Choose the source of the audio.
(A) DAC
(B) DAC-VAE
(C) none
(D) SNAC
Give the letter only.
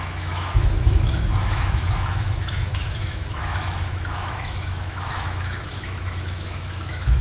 B